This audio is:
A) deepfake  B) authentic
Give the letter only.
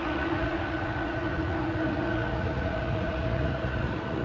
A